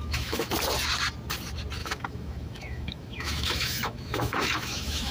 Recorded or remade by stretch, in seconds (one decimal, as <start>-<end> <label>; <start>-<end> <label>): 0.0-0.5 remade; 0.5-1.8 recorded; 1.8-5.1 remade